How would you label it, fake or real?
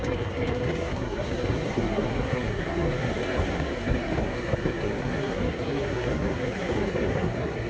fake